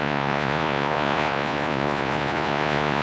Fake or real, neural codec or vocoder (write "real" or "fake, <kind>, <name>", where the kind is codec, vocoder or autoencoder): fake, vocoder, Vocos